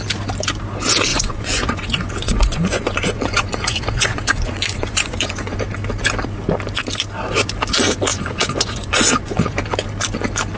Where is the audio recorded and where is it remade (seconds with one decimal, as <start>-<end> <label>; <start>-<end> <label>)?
0.0-1.1 recorded; 1.1-5.6 remade; 5.6-8.1 recorded; 8.1-9.6 remade; 9.6-10.6 recorded